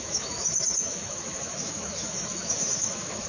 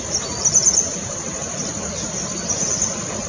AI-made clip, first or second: first